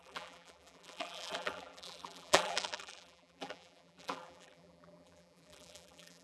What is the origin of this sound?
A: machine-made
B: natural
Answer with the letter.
A